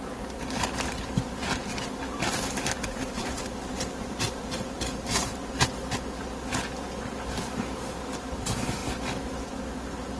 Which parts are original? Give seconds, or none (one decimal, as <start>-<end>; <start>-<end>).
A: 0.0-3.6; 5.5-10.2